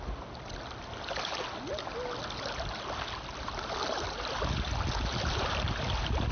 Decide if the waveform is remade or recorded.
recorded